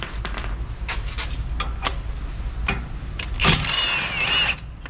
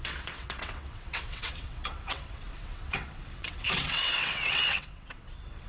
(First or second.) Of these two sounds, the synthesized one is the second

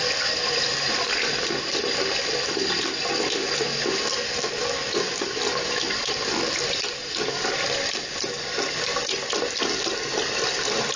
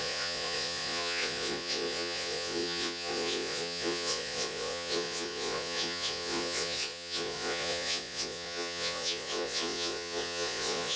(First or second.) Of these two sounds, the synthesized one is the second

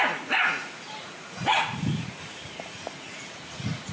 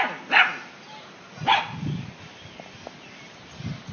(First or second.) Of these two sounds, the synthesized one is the first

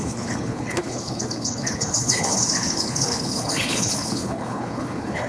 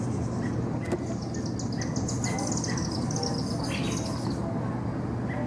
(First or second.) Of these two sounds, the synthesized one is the first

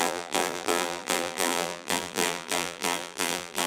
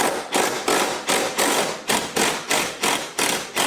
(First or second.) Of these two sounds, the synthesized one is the first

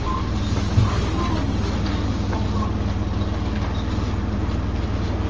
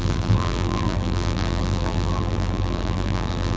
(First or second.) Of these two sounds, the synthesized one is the second